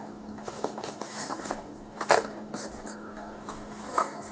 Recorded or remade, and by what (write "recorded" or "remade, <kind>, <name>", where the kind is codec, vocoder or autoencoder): remade, codec, DAC